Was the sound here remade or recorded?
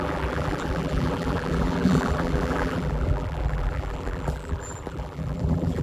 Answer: remade